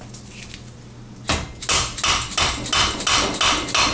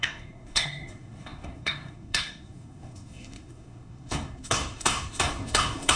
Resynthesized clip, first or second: second